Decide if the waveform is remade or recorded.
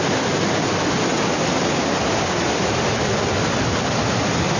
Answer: recorded